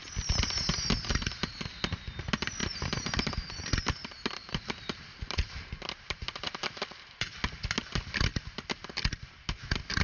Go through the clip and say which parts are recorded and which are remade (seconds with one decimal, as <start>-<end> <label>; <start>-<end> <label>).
0.0-2.6 recorded; 2.6-3.5 remade; 3.5-4.4 recorded; 4.4-7.3 remade; 7.3-10.0 recorded